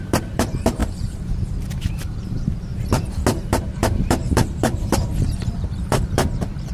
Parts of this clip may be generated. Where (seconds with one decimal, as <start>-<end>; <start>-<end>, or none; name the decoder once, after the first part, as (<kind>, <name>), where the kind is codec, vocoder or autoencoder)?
0.0-2.7 (vocoder, BigVGAN v2); 3.4-6.7

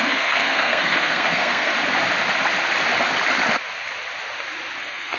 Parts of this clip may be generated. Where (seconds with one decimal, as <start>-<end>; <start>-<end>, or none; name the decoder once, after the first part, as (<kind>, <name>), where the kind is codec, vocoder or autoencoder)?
0.0-1.7 (codec, SNAC); 4.8-5.2

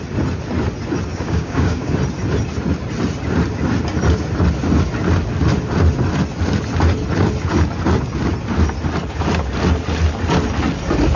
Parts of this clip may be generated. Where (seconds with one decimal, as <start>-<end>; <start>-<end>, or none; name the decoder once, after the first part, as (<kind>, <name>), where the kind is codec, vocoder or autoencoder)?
1.1-1.9 (codec, DAC)

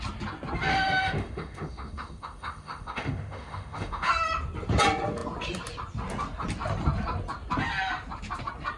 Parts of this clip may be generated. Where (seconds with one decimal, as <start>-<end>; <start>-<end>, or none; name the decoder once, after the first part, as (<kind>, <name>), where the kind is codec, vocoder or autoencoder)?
0.7-4.1 (autoencoder, DAC-VAE)

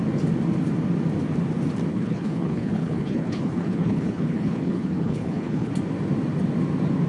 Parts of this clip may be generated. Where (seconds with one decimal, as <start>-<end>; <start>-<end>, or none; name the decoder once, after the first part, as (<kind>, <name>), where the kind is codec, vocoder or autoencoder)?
1.9-5.7 (codec, HILCodec)

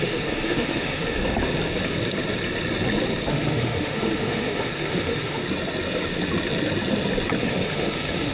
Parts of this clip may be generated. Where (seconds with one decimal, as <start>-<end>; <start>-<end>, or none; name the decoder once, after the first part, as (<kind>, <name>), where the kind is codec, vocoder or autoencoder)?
0.0-1.2 (autoencoder, DAC-VAE); 3.3-5.4; 7.4-8.3

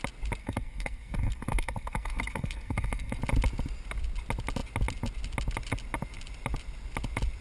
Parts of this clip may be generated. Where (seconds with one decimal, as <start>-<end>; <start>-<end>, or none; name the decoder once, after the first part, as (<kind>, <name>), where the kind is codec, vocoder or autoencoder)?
0.4-3.2 (codec, SNAC)